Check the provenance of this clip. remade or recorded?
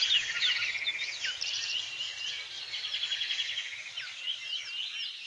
recorded